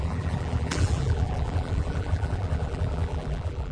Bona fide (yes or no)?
no